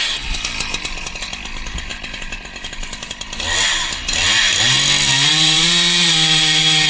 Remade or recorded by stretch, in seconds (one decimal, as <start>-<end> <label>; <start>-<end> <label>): 0.0-6.9 recorded